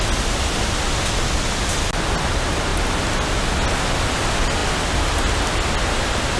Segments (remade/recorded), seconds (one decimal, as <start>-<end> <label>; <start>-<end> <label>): 0.0-6.4 recorded